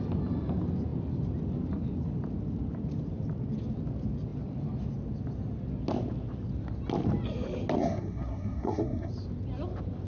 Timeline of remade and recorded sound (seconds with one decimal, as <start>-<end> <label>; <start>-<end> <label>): 0.0-7.8 recorded; 7.8-9.1 remade; 9.1-10.1 recorded